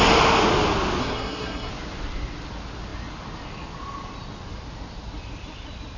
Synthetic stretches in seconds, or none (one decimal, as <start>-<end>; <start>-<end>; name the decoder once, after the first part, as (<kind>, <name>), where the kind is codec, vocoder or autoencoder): 1.0-1.7 (codec, SNAC)